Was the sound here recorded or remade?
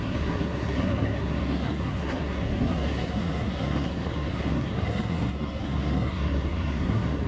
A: remade